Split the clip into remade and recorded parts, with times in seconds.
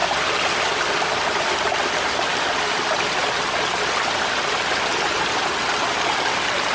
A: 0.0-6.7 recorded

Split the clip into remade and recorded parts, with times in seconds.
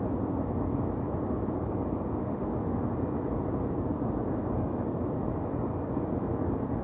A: 0.0-2.2 recorded; 2.2-2.8 remade; 2.8-6.8 recorded